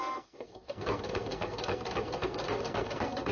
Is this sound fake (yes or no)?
yes